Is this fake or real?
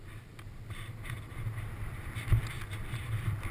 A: real